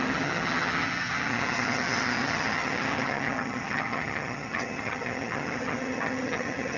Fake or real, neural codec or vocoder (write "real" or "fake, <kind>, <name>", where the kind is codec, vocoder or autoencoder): fake, vocoder, HiFi-GAN